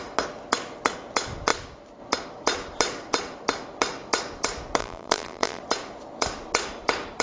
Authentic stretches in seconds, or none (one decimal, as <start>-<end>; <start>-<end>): 0.0-4.8; 5.6-7.2